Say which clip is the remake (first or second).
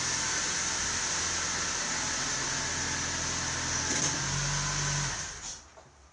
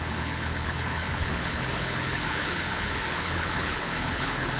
second